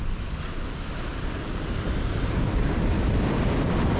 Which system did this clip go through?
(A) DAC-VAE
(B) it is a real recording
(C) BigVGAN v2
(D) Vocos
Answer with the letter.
B